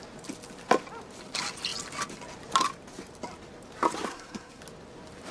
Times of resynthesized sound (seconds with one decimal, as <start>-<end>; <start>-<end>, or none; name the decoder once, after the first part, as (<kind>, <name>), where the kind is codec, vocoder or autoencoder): 4.1-4.6 (codec, SNAC)

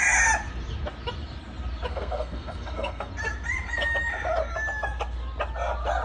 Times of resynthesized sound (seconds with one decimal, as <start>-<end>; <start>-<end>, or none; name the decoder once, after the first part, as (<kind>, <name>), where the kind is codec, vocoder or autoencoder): 1.9-3.1 (codec, SNAC)

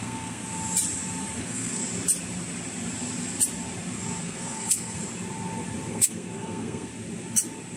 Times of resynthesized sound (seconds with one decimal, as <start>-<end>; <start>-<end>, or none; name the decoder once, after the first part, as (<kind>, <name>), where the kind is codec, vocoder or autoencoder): 0.0-0.4 (codec, SNAC); 1.4-1.8; 4.2-5.0; 5.9-6.9

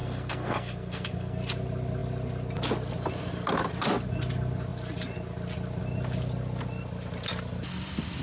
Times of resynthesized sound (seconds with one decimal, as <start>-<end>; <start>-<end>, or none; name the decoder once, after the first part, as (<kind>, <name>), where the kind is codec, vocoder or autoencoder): 0.0-1.4 (codec, SNAC)